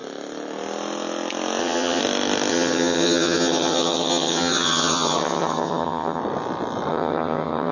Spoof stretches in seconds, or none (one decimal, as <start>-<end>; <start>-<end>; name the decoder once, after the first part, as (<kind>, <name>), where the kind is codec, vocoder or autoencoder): 1.6-2.0 (vocoder, HiFi-GAN); 2.5-6.2; 6.9-7.7